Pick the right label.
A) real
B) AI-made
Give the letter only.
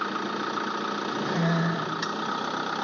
A